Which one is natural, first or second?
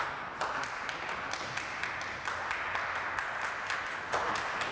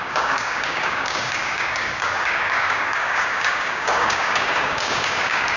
first